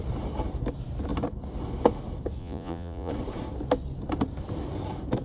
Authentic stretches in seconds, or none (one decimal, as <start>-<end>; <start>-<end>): 0.0-2.4; 3.1-5.2

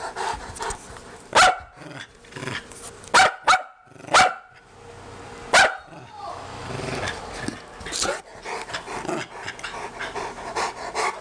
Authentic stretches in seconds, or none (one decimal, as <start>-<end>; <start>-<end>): 0.0-11.2

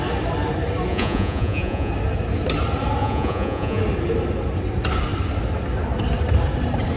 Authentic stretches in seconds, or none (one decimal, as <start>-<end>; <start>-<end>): 0.0-0.9; 1.9-3.0; 3.8-7.0

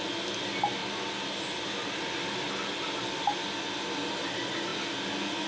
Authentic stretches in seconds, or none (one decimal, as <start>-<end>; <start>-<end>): 0.0-5.5

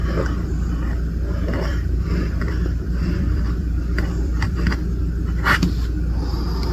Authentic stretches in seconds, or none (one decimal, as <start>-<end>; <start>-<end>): 0.0-1.7; 4.7-6.7

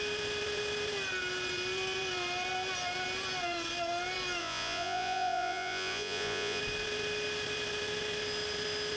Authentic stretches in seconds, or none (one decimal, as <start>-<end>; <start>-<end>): 0.0-4.4; 6.6-9.0